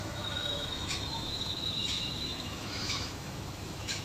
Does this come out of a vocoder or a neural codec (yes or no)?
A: yes